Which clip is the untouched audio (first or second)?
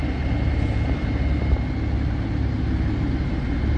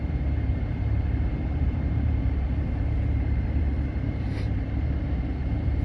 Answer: first